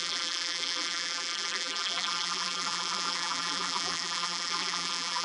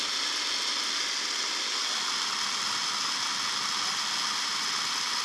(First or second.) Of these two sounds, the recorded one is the second